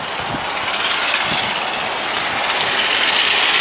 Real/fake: real